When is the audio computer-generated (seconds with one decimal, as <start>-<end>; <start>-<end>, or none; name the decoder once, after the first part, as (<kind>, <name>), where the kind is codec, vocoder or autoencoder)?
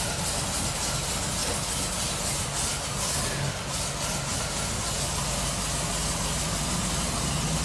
none